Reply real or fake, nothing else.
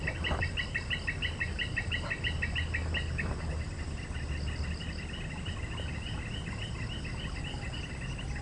real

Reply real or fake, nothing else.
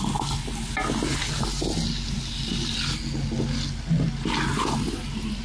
real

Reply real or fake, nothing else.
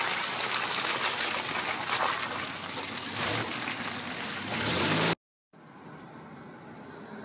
real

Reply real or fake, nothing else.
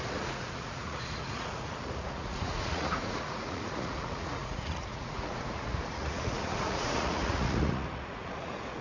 fake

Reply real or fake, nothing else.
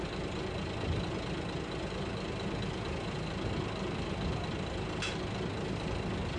real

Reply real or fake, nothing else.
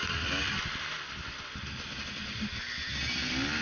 real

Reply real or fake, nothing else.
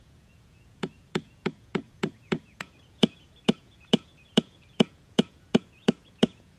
fake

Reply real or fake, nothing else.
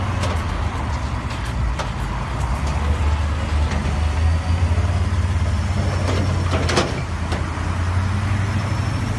real